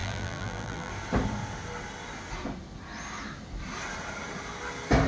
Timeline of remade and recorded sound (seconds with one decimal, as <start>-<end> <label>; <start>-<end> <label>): 0.0-0.9 remade; 0.9-5.1 recorded